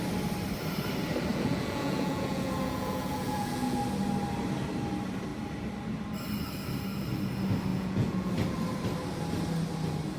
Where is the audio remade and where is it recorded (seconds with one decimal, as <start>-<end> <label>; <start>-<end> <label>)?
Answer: 0.0-1.3 recorded; 1.3-3.8 remade; 3.8-7.7 recorded; 7.7-8.3 remade; 8.3-10.2 recorded

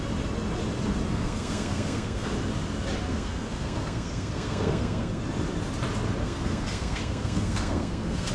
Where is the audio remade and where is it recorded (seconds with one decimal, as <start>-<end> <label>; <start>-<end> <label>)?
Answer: 0.0-1.1 recorded; 1.1-2.3 remade; 2.3-3.1 recorded; 3.1-5.2 remade; 5.2-6.2 recorded; 6.2-8.3 remade

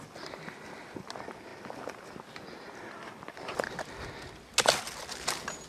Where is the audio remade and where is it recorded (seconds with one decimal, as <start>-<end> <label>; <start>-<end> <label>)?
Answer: 0.0-5.7 recorded

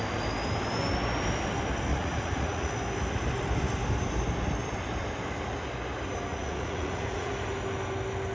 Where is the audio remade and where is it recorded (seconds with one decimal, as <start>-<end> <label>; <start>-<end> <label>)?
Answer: 0.0-1.9 recorded; 1.9-2.7 remade; 2.7-6.3 recorded; 6.3-7.3 remade; 7.3-8.3 recorded

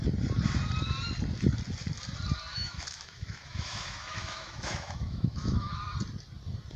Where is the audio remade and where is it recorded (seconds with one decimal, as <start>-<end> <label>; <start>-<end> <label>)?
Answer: 0.0-2.5 recorded; 2.5-5.8 remade; 5.8-6.8 recorded

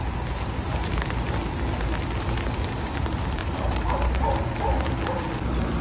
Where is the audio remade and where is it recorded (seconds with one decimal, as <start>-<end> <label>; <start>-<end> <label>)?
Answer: 0.0-3.4 recorded; 3.4-4.2 remade; 4.2-5.8 recorded

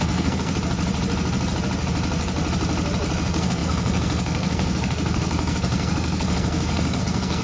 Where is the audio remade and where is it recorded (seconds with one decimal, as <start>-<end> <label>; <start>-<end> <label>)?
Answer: 0.0-0.5 remade; 0.5-3.1 recorded; 3.1-7.4 remade

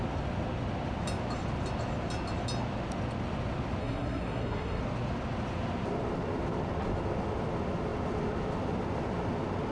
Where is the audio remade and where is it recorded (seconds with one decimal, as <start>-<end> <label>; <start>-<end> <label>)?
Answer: 0.0-3.8 recorded; 3.8-4.8 remade; 4.8-9.7 recorded